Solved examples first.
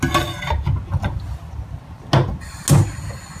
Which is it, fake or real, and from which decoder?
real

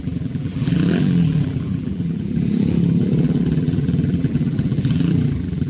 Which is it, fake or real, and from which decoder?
fake, vocoder, BigVGAN v2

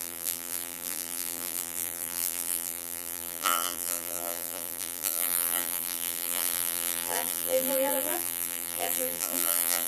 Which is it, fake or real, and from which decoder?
fake, vocoder, BigVGAN v2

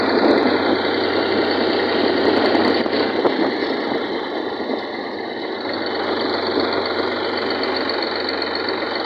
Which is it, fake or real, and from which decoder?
real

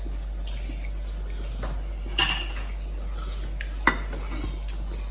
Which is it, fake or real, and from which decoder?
real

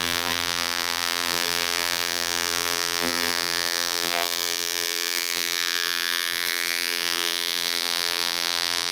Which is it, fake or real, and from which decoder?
fake, vocoder, BigVGAN v2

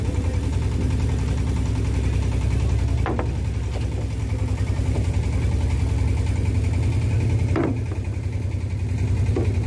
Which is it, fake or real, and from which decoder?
real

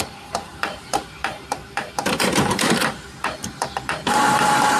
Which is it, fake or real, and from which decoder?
fake, vocoder, BigVGAN v2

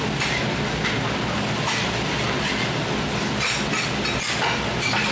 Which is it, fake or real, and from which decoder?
real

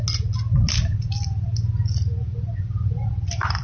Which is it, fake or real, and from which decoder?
real